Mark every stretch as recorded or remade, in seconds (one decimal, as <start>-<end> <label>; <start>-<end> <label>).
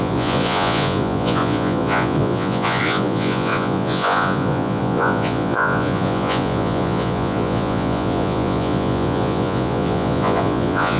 0.0-11.0 remade